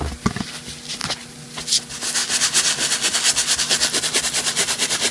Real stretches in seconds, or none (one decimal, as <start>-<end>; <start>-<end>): 0.0-5.1